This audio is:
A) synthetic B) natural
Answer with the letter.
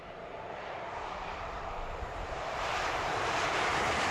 A